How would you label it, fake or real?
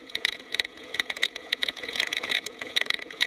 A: fake